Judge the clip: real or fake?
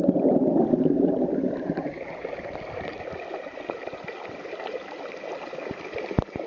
real